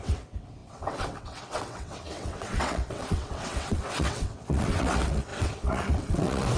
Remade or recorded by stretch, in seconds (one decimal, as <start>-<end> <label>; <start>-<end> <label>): 0.0-6.6 remade